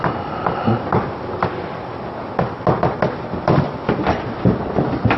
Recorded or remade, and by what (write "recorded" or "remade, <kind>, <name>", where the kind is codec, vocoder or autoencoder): recorded